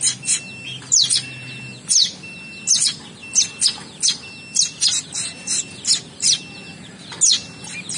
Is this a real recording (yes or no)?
yes